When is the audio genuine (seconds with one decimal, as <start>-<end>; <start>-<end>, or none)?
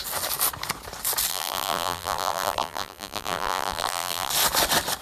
0.0-1.3; 4.3-5.0